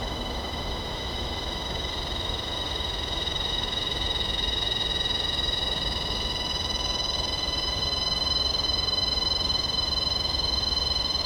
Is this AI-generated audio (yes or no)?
yes